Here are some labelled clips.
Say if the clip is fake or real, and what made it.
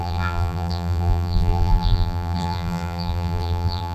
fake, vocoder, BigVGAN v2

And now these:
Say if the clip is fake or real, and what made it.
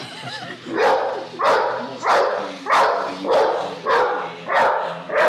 real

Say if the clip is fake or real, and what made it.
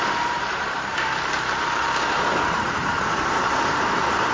fake, vocoder, BigVGAN v2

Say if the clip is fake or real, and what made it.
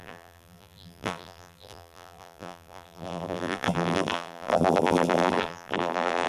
fake, vocoder, BigVGAN v2